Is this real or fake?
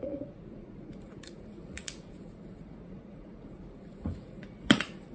fake